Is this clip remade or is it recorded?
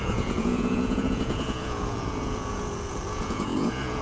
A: remade